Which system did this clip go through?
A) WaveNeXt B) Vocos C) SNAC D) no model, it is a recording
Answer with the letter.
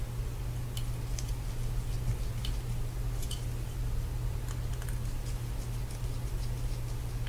D